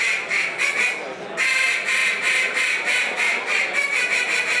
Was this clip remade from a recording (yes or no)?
no